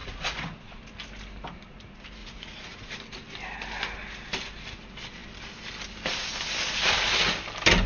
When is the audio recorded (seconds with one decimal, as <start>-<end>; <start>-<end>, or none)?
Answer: 0.8-2.2; 2.9-7.9